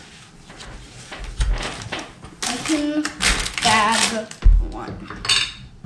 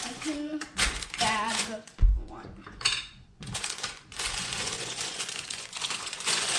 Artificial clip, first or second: second